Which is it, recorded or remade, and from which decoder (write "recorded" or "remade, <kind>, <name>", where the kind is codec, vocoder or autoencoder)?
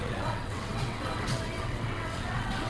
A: remade, vocoder, WaveNeXt